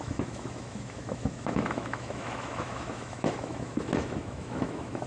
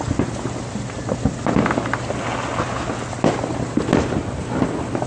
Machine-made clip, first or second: first